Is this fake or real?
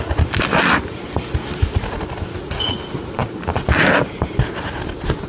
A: real